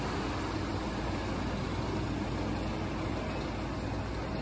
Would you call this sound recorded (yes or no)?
yes